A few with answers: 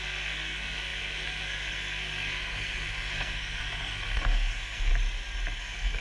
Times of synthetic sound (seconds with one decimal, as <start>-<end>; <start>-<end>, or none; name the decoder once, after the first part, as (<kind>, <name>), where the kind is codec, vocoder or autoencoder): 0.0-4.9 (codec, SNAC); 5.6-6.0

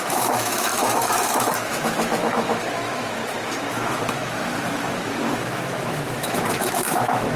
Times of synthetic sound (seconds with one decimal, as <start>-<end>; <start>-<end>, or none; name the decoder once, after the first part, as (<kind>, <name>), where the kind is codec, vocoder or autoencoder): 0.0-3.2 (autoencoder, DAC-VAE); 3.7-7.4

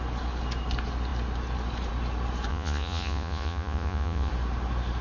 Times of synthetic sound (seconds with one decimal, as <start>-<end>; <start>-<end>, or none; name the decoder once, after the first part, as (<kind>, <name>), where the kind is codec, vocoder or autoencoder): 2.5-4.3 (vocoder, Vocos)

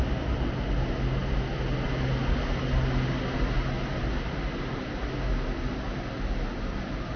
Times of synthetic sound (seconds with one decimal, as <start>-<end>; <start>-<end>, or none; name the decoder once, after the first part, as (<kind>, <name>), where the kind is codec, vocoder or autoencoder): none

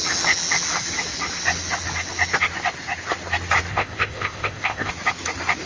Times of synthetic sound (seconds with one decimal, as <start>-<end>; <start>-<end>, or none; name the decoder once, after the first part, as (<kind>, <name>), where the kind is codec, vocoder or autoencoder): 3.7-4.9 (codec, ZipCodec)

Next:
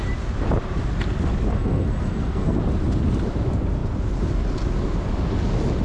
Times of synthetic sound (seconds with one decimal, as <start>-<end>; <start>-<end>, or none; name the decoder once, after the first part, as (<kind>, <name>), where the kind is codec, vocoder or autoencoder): 1.5-2.6 (codec, SNAC)

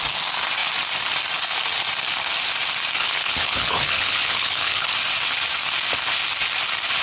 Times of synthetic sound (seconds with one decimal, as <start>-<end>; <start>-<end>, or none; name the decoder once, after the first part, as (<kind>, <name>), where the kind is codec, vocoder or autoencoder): 3.0-4.9 (codec, HILCodec)